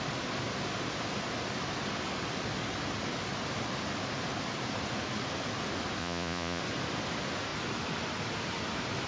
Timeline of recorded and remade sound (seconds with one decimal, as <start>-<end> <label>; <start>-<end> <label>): 0.0-6.0 recorded; 6.0-6.6 remade; 6.6-9.1 recorded

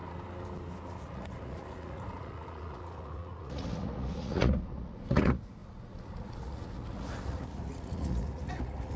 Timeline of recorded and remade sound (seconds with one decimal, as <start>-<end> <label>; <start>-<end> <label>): 0.0-1.0 recorded; 1.0-9.0 remade

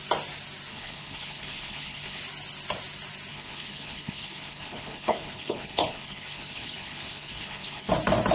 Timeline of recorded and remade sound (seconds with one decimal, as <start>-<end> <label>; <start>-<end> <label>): 0.0-0.7 recorded; 0.7-2.2 remade; 2.2-3.3 recorded; 3.3-7.9 remade; 7.9-8.3 recorded

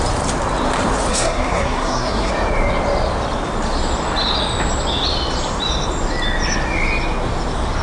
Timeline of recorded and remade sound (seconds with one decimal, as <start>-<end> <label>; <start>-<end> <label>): 0.0-1.1 recorded; 1.1-2.3 remade; 2.3-7.8 recorded

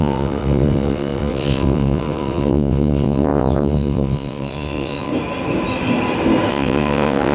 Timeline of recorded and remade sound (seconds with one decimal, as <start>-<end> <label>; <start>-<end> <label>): 0.0-5.1 remade; 5.1-6.5 recorded; 6.5-7.3 remade